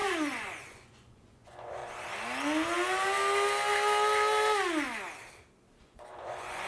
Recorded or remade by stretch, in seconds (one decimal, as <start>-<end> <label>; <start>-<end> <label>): 0.0-1.8 remade; 1.8-5.8 recorded; 5.8-6.7 remade